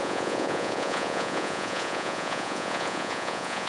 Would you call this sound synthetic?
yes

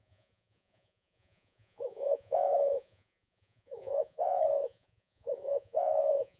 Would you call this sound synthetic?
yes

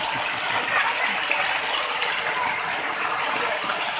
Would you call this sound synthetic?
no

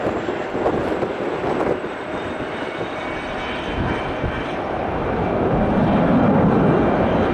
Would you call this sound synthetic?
no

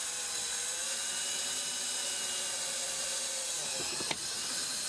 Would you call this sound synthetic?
no